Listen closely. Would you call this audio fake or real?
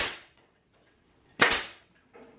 fake